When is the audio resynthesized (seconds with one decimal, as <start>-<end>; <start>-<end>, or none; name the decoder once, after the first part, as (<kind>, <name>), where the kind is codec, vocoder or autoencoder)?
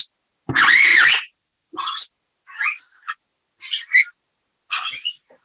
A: none